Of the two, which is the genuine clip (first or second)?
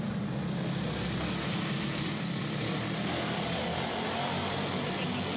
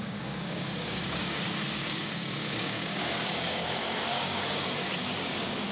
first